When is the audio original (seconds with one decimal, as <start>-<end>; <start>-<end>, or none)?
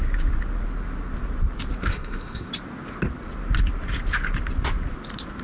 0.0-1.9; 2.5-5.4